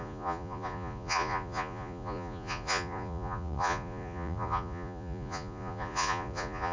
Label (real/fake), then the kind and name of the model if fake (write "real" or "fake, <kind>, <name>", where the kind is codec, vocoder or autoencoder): fake, vocoder, Vocos